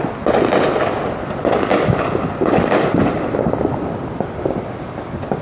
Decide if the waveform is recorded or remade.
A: recorded